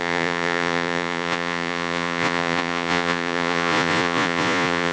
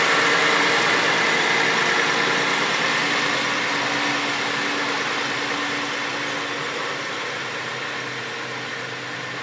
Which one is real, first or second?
second